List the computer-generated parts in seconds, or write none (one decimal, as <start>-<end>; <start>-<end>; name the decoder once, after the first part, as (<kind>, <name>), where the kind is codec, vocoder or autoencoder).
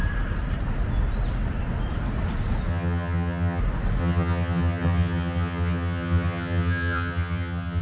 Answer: 2.7-3.6 (vocoder, HiFi-GAN); 4.0-7.8